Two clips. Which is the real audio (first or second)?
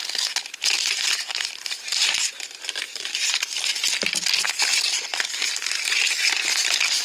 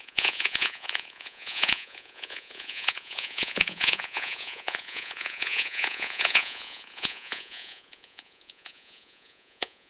first